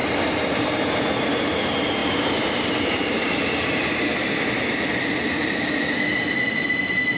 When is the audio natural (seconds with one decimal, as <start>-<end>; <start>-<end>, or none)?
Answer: 1.0-2.0; 3.9-7.2